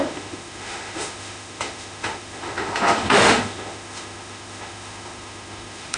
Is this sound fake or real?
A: fake